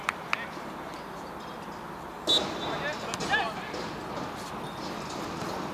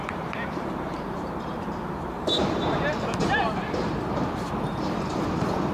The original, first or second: first